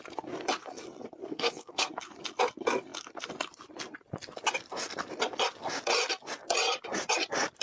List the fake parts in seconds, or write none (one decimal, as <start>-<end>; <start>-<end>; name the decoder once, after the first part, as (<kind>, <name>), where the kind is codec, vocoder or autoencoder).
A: 1.2-1.9 (codec, SNAC)